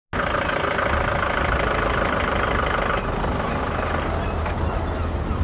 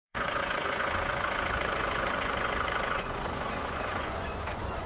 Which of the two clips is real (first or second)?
first